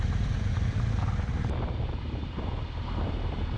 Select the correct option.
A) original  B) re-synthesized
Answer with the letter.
B